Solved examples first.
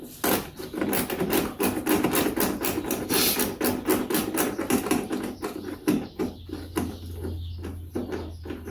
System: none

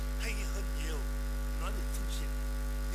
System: none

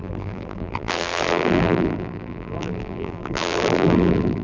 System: vocoder, BigVGAN v2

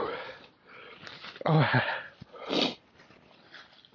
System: none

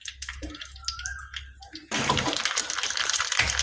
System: vocoder, BigVGAN v2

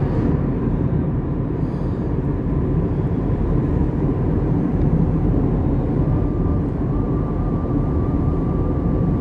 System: vocoder, BigVGAN v2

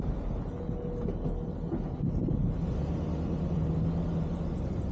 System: none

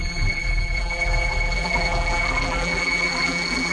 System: vocoder, BigVGAN v2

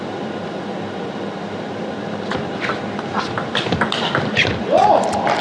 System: vocoder, BigVGAN v2